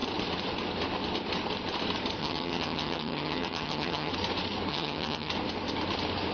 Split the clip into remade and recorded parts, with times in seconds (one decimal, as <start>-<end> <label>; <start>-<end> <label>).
0.0-2.2 recorded; 2.2-4.1 remade; 4.1-4.7 recorded; 4.7-5.3 remade; 5.3-6.3 recorded